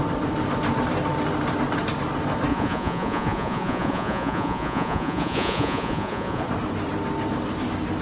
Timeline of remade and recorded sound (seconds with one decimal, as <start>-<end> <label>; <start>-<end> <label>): 0.0-2.5 recorded; 2.5-6.4 remade; 6.4-8.0 recorded